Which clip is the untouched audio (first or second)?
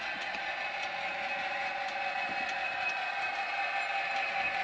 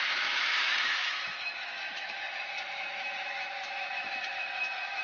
first